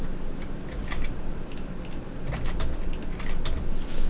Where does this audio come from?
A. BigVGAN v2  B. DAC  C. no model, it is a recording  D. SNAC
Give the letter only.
C